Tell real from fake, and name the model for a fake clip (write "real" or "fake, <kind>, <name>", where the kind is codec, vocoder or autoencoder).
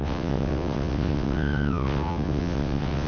fake, vocoder, WaveNeXt